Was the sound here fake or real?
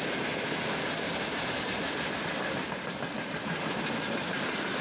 real